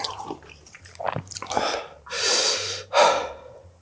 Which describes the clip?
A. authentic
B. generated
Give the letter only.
B